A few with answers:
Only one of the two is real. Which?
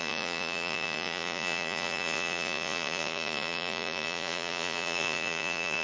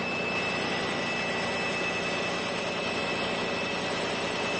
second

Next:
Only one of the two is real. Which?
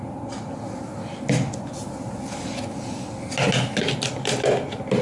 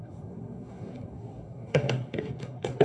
first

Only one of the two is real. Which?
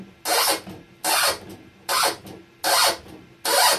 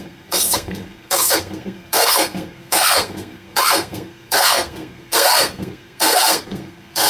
first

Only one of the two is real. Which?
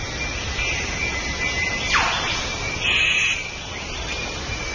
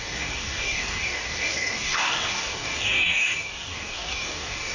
first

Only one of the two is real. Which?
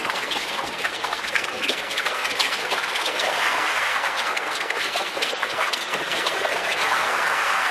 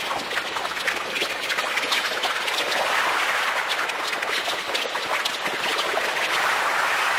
second